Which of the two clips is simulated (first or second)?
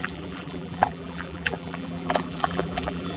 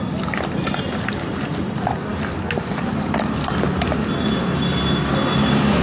first